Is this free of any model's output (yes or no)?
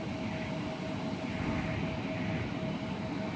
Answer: yes